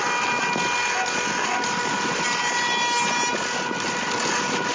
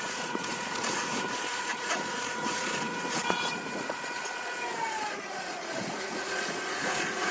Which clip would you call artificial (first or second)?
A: second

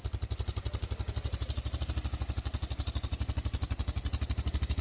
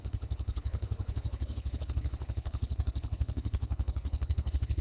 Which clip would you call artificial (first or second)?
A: second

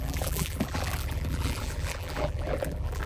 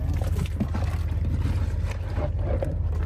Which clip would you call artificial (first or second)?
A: first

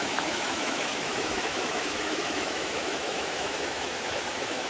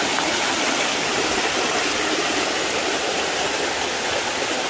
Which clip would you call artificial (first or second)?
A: first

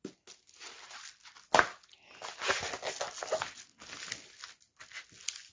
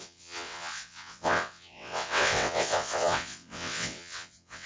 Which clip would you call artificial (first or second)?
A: second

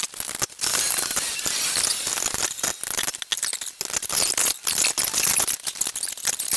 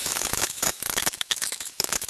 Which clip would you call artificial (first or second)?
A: second